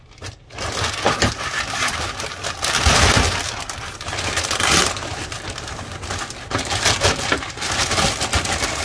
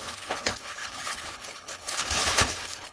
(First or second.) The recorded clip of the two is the first